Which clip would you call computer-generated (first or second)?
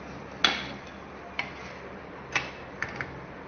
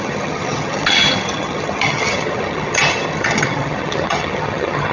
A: second